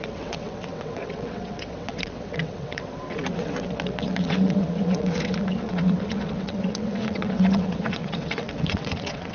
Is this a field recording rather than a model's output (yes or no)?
no